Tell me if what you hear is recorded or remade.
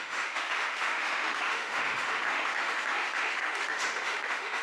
remade